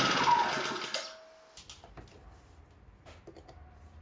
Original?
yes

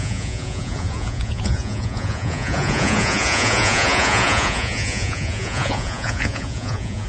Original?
no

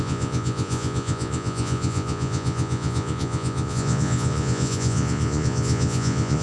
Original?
no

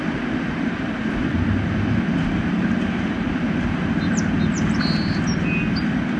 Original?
yes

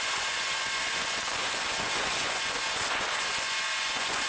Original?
no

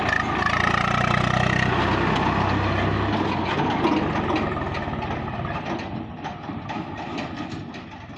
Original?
yes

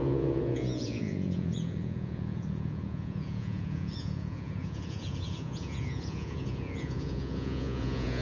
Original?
no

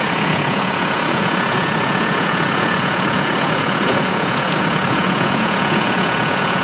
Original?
no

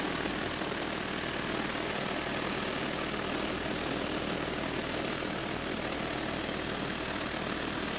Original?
yes